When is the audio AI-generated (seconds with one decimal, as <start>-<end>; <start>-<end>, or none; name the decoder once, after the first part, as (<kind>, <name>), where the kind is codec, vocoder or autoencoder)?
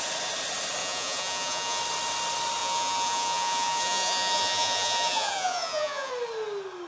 0.8-1.8 (vocoder, Vocos); 2.6-6.1